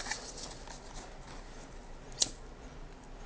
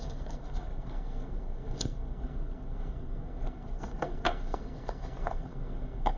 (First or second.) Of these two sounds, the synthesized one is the second